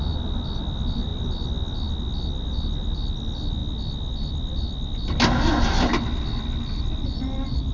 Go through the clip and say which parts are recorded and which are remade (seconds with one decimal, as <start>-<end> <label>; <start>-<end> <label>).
0.0-7.7 recorded